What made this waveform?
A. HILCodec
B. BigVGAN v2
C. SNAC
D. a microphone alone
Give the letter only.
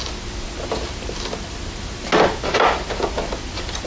D